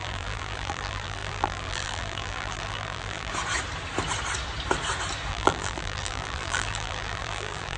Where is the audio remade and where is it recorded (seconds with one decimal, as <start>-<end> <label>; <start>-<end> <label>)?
0.0-3.3 remade; 3.3-5.3 recorded; 5.3-7.8 remade